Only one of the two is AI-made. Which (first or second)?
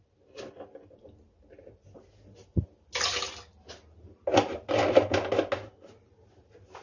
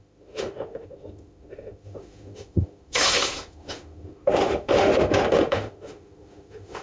second